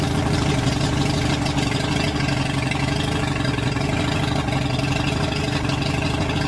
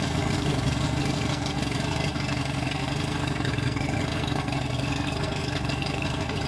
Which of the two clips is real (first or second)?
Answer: first